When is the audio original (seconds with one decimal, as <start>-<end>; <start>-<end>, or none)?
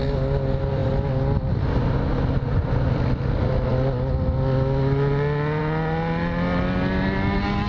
0.0-7.7